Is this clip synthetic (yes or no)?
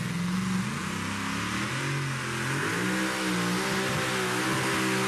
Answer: no